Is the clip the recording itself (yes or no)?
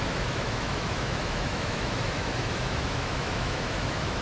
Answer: no